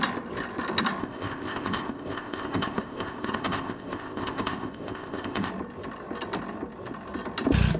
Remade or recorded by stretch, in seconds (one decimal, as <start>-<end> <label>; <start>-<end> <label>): 0.0-1.0 recorded; 1.0-5.5 remade; 5.5-7.8 recorded